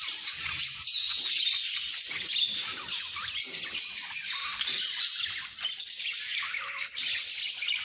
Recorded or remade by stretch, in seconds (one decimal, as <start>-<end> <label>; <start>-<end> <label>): 0.0-7.8 recorded